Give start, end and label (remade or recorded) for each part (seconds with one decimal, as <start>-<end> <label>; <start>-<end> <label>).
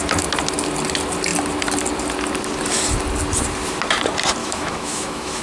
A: 0.0-4.4 recorded; 4.4-5.4 remade